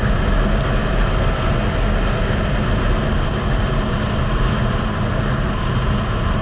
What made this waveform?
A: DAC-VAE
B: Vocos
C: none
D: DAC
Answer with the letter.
C